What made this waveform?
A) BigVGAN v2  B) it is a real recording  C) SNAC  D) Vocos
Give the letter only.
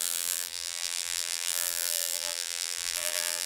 A